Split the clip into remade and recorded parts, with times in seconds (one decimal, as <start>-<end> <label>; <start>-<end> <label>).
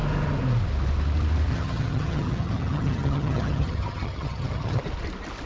0.0-1.5 recorded; 1.5-4.8 remade; 4.8-5.5 recorded